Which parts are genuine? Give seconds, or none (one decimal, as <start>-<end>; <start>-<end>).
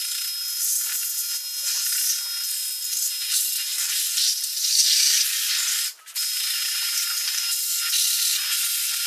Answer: 0.0-4.5; 5.5-9.1